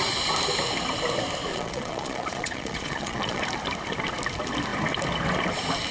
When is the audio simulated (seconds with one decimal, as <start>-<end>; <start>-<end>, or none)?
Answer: 1.5-3.4

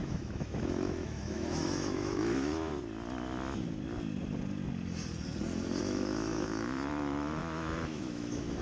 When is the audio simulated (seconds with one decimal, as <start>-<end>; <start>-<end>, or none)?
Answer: 0.0-2.7; 5.8-8.6